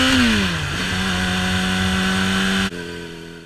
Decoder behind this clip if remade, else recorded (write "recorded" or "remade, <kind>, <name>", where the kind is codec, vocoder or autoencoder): recorded